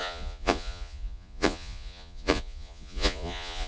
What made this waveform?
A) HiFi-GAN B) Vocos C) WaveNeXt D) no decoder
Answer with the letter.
B